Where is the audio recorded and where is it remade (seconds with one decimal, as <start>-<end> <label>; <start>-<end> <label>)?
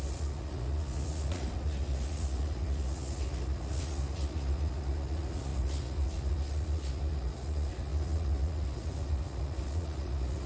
0.0-10.5 remade